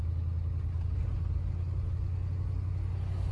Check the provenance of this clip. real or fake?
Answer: real